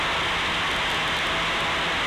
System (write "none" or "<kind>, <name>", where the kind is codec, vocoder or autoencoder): none